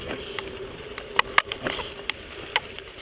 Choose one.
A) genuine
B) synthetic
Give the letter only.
A